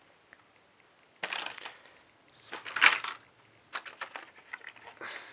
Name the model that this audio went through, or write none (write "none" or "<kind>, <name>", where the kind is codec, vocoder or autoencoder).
none